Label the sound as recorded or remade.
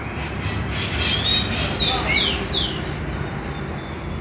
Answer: recorded